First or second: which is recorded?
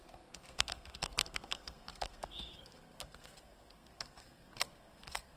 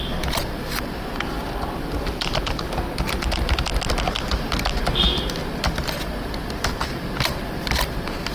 second